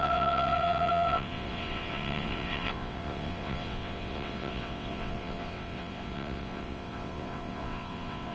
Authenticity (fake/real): fake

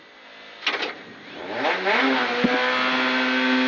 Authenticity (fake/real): real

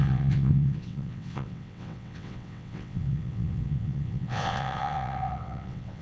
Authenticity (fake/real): fake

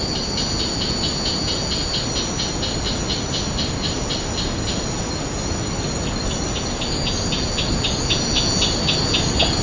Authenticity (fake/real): real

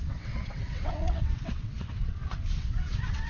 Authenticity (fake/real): fake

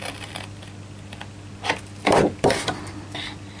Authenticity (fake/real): real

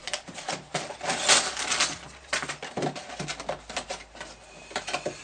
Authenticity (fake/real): real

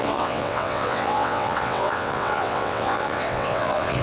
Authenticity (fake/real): fake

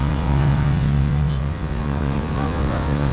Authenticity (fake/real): fake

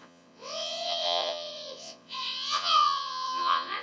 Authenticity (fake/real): fake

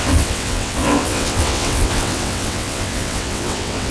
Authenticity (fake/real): fake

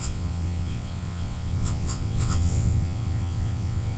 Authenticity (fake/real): fake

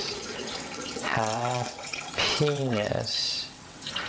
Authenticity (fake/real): fake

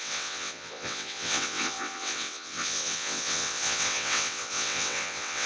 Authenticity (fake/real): fake